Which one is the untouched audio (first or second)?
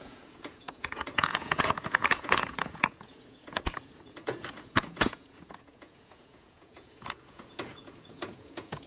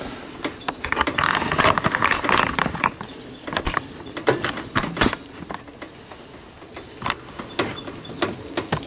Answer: second